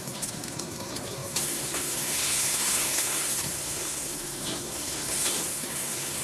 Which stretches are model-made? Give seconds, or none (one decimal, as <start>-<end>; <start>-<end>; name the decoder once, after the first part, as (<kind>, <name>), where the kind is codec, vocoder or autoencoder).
0.0-6.2 (codec, SNAC)